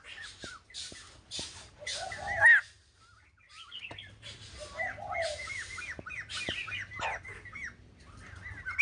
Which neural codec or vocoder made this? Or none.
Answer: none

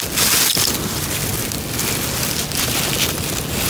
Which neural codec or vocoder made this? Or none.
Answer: none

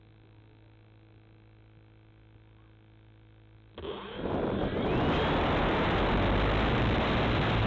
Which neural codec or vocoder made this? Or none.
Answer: none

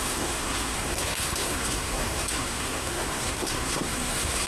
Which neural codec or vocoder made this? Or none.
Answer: codec, SNAC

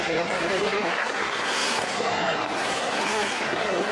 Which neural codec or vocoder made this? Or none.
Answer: codec, SNAC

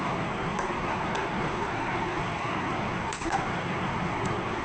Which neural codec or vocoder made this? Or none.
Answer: codec, SNAC